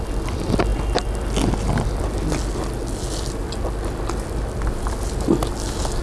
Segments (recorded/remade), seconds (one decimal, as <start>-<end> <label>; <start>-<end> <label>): 0.0-6.0 recorded